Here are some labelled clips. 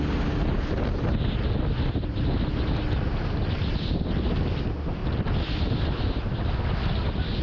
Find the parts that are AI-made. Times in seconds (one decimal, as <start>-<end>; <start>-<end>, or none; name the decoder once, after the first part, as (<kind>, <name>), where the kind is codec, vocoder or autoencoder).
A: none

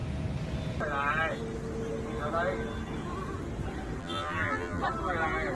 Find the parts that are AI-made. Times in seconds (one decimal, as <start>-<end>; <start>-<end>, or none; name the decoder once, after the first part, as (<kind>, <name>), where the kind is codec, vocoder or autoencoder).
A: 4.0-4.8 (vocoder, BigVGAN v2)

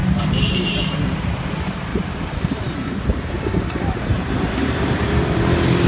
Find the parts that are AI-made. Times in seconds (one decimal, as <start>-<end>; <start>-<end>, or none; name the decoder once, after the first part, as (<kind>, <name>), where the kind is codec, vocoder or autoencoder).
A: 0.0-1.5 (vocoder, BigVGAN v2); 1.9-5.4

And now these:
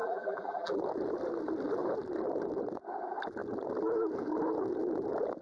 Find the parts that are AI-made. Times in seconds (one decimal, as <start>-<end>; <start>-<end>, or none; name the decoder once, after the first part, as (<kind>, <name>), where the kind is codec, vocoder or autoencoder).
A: 0.0-0.8 (vocoder, BigVGAN v2)

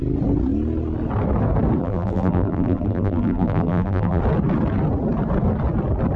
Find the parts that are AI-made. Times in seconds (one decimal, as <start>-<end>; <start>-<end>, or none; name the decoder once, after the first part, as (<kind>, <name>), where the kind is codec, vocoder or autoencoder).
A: 1.8-4.2 (vocoder, BigVGAN v2)